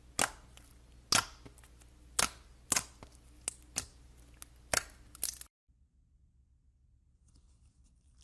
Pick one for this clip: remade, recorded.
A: recorded